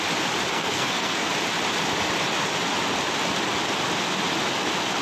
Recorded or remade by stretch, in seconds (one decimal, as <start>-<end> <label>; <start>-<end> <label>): 0.0-0.5 recorded; 0.5-1.3 remade; 1.3-5.0 recorded